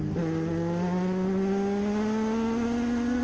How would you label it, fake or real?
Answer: real